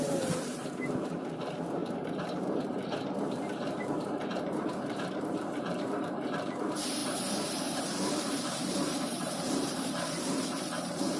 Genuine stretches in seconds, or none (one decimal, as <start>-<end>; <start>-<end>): 7.0-7.8